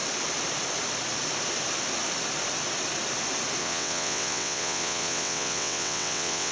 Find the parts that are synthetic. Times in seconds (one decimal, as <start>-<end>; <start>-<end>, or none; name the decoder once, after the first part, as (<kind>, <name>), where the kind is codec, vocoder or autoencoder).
3.6-6.5 (vocoder, WaveNeXt)